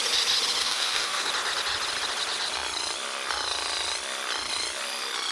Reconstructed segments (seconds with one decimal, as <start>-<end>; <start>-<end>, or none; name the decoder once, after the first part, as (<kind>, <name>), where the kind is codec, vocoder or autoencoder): 0.6-1.3 (codec, DAC)